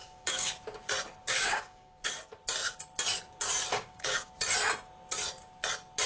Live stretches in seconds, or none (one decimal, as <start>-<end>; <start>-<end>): 0.5-1.2; 2.1-3.7; 4.3-6.1

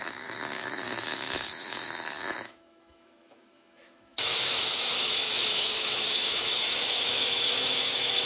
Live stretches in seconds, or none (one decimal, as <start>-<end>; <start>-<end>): none

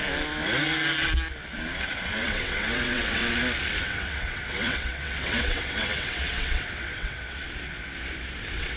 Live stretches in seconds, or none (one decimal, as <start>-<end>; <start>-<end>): 0.0-2.0; 3.2-3.8; 7.4-8.4

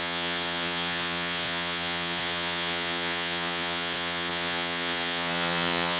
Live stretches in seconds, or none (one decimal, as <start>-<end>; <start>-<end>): none

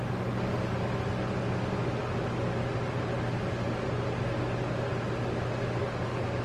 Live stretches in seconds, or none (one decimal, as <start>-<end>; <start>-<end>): 0.0-6.4

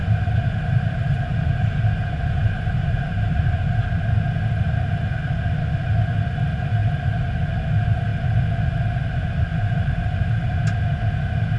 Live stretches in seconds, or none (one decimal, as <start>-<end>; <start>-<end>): 3.8-9.5; 10.6-11.6